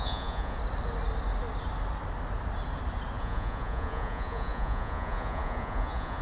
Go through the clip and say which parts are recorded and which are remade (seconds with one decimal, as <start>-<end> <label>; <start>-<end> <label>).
0.0-0.6 remade; 0.6-3.2 recorded; 3.2-6.2 remade

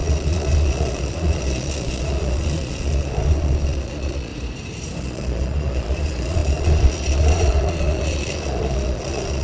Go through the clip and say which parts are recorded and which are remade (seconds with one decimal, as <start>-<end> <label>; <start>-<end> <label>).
0.0-4.3 remade; 4.3-5.0 recorded; 5.0-9.4 remade

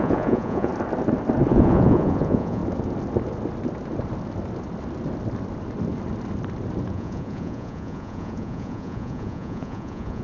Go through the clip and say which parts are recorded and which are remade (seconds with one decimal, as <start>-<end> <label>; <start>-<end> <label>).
0.0-0.7 remade; 0.7-1.5 recorded; 1.5-2.6 remade; 2.6-6.9 recorded; 6.9-10.2 remade

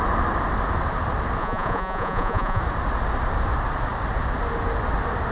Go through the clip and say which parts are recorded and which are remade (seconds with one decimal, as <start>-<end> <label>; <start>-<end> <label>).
0.0-1.4 recorded; 1.4-2.6 remade; 2.6-5.3 recorded

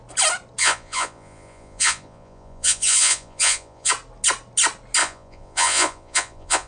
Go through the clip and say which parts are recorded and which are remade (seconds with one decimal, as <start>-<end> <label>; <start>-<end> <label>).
0.0-0.6 recorded; 0.6-3.9 remade; 3.9-5.0 recorded; 5.0-6.7 remade

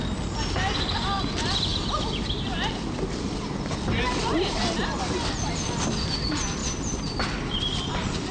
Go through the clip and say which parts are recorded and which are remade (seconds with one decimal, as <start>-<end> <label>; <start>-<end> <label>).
0.0-8.3 recorded

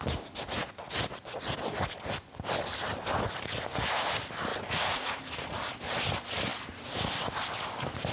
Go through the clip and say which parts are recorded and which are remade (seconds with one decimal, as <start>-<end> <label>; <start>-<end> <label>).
0.0-4.5 recorded; 4.5-5.2 remade; 5.2-8.1 recorded

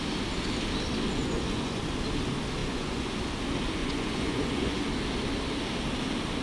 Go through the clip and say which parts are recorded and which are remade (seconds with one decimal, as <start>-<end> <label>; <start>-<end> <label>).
0.0-1.2 recorded; 1.2-1.8 remade; 1.8-2.6 recorded; 2.6-3.1 remade; 3.1-3.8 recorded; 3.8-4.8 remade; 4.8-6.4 recorded